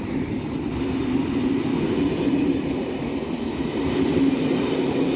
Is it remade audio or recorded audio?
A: recorded